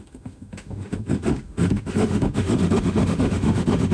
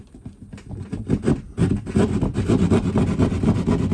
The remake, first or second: first